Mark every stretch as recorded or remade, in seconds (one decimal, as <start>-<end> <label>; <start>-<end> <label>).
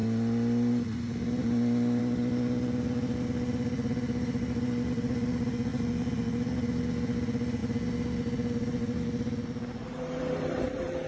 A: 0.0-11.1 recorded